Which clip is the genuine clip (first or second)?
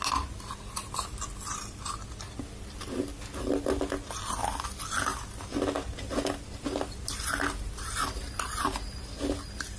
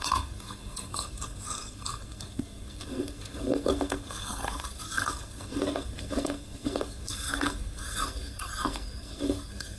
first